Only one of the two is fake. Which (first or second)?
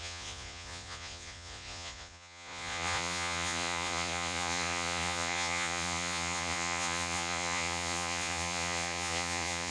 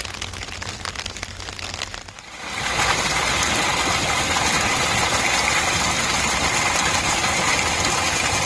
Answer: first